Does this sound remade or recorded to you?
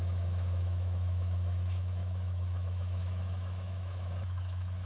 remade